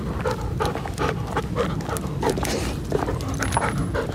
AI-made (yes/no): no